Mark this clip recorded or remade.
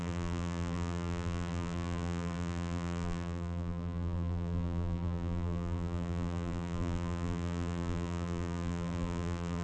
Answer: remade